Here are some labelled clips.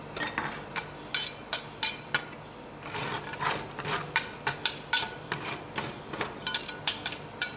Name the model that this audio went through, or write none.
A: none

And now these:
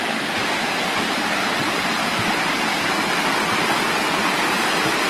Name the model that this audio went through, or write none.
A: none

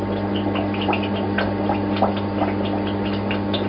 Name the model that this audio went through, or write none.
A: none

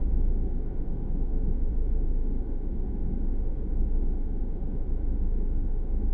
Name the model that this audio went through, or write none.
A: autoencoder, DAC-VAE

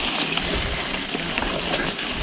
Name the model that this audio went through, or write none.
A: none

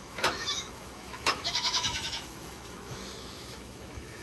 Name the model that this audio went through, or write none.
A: autoencoder, DAC-VAE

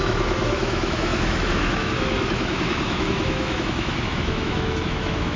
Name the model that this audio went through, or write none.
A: autoencoder, DAC-VAE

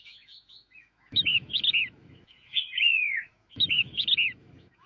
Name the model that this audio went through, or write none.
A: autoencoder, DAC-VAE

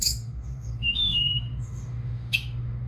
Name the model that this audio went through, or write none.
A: autoencoder, DAC-VAE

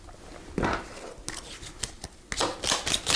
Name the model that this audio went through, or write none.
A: none